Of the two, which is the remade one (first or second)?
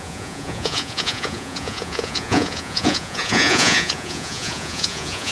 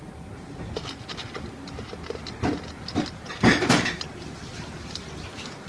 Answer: first